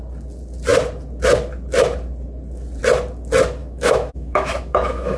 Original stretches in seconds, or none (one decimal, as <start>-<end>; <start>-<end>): 0.0-3.6

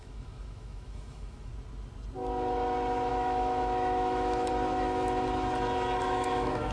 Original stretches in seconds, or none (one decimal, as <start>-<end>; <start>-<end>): 1.5-3.1; 4.5-6.0

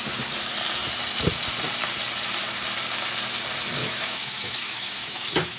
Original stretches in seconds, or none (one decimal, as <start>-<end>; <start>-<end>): 0.0-3.8

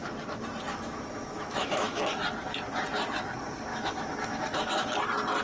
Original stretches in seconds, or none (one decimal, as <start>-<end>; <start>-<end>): 0.0-0.7; 2.0-3.7; 5.0-5.4

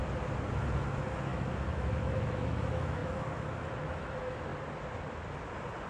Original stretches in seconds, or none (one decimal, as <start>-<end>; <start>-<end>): 0.0-0.9; 4.5-5.9

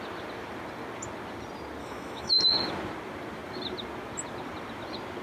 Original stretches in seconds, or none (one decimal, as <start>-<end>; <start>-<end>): 0.0-1.8; 2.4-5.2

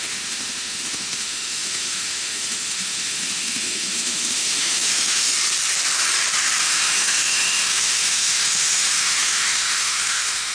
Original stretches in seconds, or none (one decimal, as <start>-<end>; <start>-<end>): 5.3-6.6